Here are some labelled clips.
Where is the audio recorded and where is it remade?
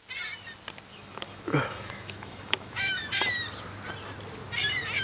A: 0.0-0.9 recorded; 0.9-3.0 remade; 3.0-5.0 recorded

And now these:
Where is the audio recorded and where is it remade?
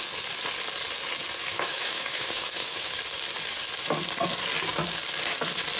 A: 0.0-1.4 recorded; 1.4-3.0 remade; 3.0-5.8 recorded